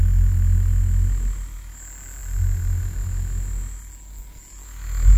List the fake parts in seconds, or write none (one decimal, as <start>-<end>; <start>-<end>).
none